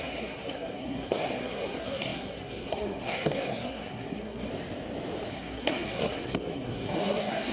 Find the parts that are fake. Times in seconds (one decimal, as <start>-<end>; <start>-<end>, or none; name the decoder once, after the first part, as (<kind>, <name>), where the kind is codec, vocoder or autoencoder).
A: 0.0-4.5 (codec, SNAC); 5.3-7.5